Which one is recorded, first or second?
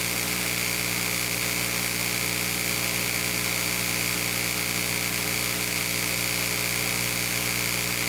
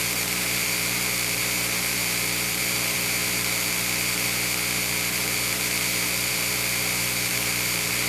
first